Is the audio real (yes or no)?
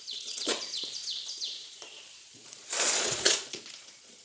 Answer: no